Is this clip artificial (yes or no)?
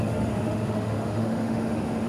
yes